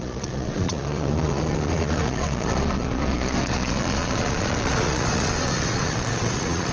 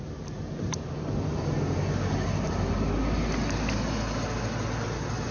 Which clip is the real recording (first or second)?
second